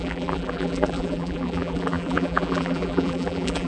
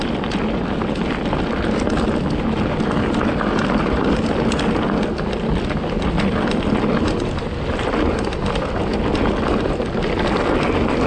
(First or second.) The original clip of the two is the second